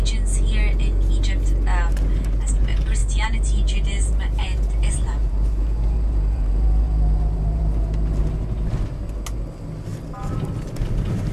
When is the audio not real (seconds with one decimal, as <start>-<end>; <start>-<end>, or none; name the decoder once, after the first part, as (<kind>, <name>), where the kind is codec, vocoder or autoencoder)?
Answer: 3.0-7.6 (vocoder, BigVGAN v2)